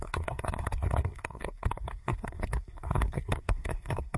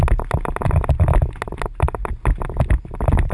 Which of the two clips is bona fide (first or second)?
second